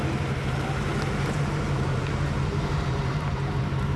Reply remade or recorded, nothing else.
remade